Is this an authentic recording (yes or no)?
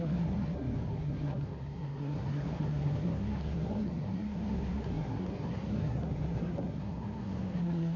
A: no